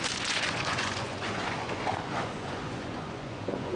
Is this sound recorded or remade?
remade